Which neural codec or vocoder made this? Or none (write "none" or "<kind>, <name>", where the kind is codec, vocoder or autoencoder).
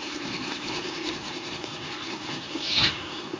codec, SNAC